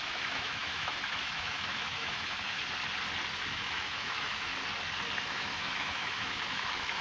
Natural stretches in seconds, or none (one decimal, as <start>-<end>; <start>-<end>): 2.6-3.5; 4.5-5.2